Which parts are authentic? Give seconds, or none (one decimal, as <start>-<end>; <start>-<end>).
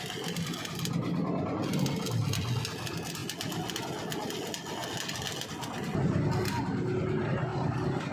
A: 0.0-7.5